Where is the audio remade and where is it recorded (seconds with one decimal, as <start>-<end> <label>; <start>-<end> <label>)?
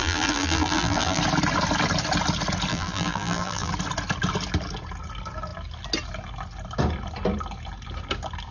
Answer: 0.0-1.2 remade; 1.2-2.7 recorded; 2.7-3.7 remade; 3.7-8.5 recorded